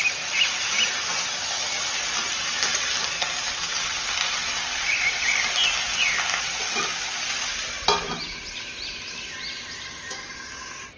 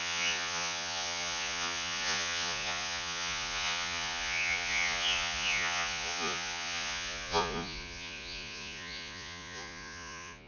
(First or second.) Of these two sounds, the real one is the first